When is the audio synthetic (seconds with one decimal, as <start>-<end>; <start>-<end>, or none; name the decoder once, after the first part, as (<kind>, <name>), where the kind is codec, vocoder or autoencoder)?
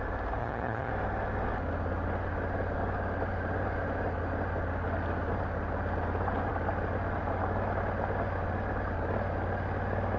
0.4-0.9 (vocoder, HiFi-GAN)